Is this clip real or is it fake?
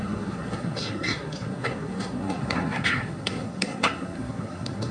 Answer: fake